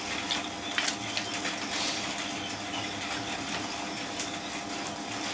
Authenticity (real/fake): real